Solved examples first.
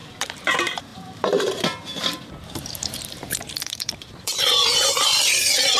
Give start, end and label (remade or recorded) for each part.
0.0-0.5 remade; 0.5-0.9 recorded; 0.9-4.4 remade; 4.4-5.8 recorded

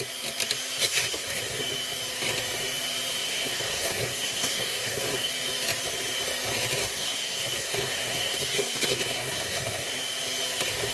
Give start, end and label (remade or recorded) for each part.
0.0-0.8 recorded; 0.8-1.4 remade; 1.4-3.1 recorded; 3.1-5.3 remade; 5.3-6.8 recorded; 6.8-10.0 remade; 10.0-10.9 recorded

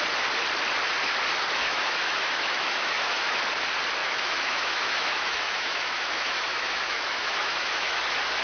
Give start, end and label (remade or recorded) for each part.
0.0-1.6 recorded; 1.6-3.4 remade; 3.4-4.0 recorded; 4.0-8.0 remade; 8.0-8.4 recorded

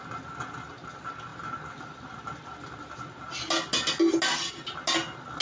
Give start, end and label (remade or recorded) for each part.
0.0-5.4 recorded

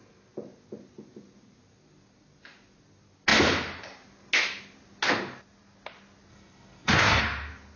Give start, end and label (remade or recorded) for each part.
0.0-6.3 recorded; 6.3-7.2 remade; 7.2-7.8 recorded

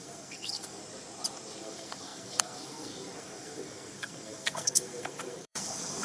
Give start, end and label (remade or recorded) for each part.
0.0-0.8 remade; 0.8-1.6 recorded; 1.6-6.0 remade